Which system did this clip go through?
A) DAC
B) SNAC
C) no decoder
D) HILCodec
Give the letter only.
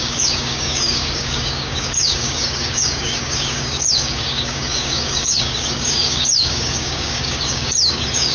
A